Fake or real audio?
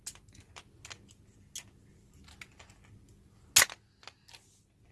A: real